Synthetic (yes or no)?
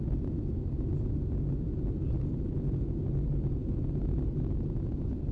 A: no